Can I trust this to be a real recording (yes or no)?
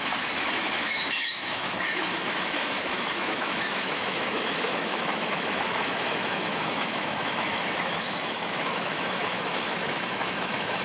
no